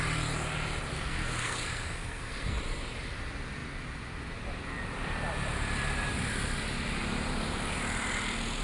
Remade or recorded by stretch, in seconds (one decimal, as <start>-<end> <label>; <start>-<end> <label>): 0.0-0.9 recorded; 0.9-2.6 remade; 2.6-8.6 recorded